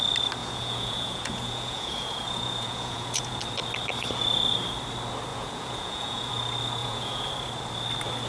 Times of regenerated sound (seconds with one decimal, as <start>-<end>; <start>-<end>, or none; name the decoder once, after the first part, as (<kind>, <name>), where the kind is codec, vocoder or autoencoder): 0.4-3.4 (vocoder, Vocos); 5.3-6.3; 6.8-7.3